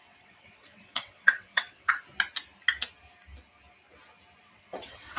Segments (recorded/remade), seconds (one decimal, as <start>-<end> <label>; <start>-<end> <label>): 0.0-1.9 remade; 1.9-4.4 recorded; 4.4-5.2 remade